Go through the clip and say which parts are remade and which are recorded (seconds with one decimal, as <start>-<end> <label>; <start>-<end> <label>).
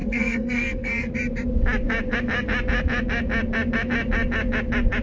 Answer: 0.0-1.1 remade; 1.1-5.0 recorded